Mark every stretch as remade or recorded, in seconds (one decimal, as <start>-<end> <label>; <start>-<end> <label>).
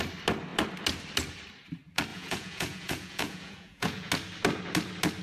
0.0-2.1 recorded; 2.1-4.1 remade; 4.1-5.2 recorded